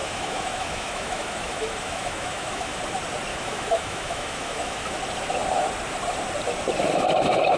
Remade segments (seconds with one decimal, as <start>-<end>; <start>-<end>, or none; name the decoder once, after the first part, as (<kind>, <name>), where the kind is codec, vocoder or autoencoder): 0.0-2.8 (autoencoder, DAC-VAE); 3.3-5.0